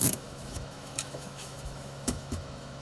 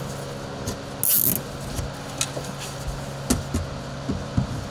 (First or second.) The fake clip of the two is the first